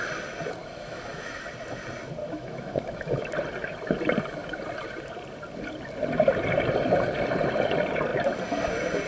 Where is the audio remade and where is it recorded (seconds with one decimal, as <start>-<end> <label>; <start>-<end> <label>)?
0.0-0.6 recorded; 0.6-1.5 remade; 1.5-2.2 recorded; 2.2-3.3 remade; 3.3-9.1 recorded